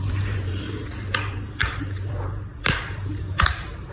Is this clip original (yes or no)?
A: no